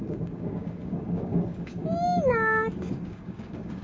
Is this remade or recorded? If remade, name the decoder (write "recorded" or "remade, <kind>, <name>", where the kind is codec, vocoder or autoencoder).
remade, codec, DAC